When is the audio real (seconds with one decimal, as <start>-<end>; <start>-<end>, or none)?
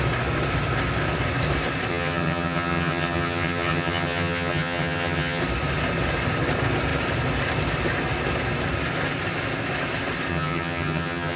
0.0-1.9; 5.4-10.3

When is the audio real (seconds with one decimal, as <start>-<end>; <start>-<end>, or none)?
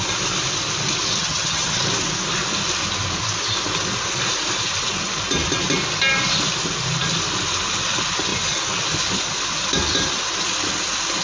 0.0-1.2; 1.8-11.2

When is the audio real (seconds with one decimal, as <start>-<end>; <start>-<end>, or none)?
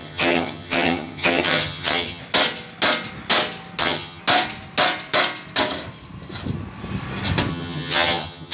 2.2-3.8; 4.2-7.5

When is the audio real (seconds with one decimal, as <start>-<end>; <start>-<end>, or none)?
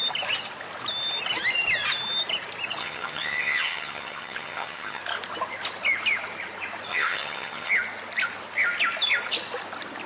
0.0-2.8; 5.0-6.9; 7.7-10.1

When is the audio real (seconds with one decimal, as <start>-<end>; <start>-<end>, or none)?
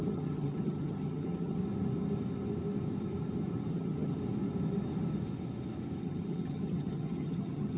1.6-3.7; 4.2-6.0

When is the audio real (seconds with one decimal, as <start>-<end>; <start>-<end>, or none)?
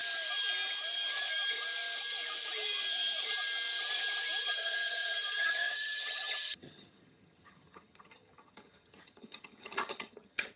0.0-4.4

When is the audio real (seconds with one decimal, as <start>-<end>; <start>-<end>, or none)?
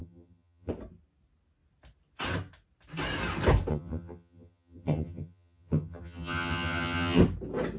0.7-3.7; 7.2-7.8